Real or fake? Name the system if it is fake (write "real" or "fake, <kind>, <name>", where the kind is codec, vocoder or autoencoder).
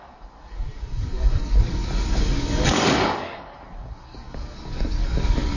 fake, codec, DAC